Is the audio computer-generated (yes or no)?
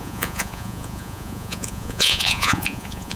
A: yes